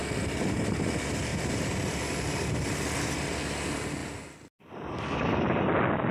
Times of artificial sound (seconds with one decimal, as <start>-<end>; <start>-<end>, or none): none